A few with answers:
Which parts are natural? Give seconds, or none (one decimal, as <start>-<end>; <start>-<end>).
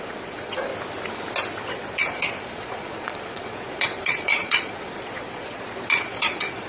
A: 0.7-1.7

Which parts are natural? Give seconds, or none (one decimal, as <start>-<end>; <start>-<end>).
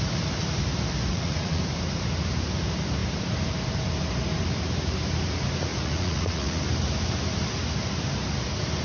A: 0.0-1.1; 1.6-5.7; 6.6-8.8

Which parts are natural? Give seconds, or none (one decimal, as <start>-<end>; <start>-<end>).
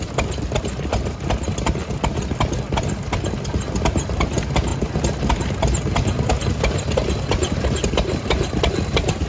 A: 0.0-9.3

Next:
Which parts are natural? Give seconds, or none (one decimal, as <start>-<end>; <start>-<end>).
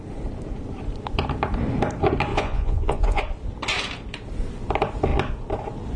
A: 0.0-2.3; 3.2-6.0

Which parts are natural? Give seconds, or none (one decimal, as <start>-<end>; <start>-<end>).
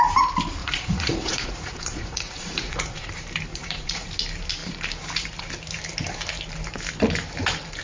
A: 0.0-0.6; 3.1-3.5; 4.1-7.8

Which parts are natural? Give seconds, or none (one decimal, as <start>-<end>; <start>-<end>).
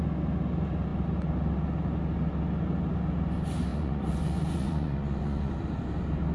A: 0.0-3.7; 5.5-6.3